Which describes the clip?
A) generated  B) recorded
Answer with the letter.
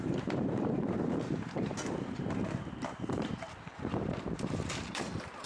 A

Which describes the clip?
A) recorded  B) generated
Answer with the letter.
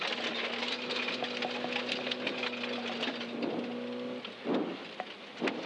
A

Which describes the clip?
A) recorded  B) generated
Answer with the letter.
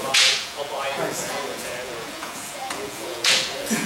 B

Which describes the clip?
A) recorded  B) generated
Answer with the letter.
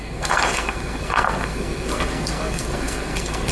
B